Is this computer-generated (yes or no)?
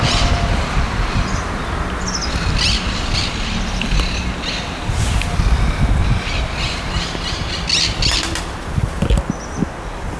no